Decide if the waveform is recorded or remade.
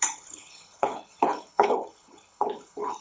remade